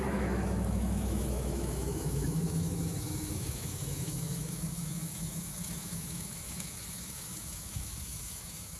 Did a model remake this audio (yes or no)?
yes